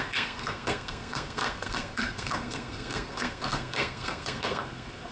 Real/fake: fake